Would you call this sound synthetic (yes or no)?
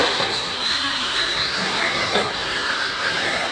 yes